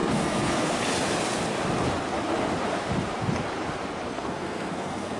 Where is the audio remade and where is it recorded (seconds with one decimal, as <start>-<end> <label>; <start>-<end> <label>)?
0.0-0.8 remade; 0.8-4.1 recorded; 4.1-5.2 remade